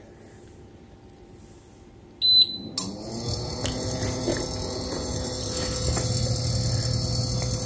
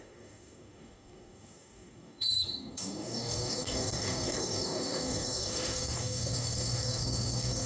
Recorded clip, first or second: first